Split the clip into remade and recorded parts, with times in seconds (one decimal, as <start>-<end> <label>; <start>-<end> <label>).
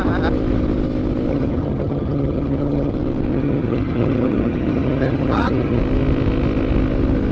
0.0-1.3 recorded; 1.3-2.9 remade; 2.9-3.3 recorded; 3.3-5.8 remade; 5.8-7.3 recorded